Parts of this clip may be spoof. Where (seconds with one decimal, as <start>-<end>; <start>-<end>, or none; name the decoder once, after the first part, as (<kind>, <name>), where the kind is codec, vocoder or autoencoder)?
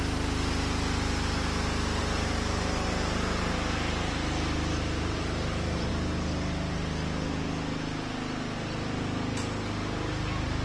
2.0-5.9 (vocoder, BigVGAN v2)